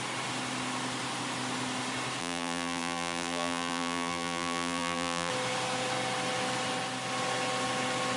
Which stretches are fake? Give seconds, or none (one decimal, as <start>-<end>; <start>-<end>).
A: 2.2-5.3